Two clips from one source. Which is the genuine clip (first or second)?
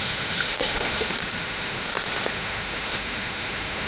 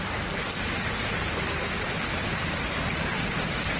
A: second